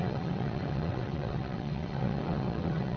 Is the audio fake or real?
fake